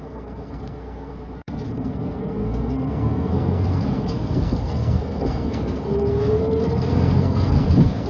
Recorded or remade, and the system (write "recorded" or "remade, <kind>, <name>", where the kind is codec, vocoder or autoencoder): remade, codec, SNAC